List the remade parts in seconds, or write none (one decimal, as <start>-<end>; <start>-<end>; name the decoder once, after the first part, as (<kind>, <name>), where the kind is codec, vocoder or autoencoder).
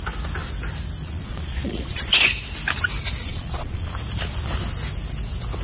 1.0-2.1 (vocoder, Vocos); 3.2-3.9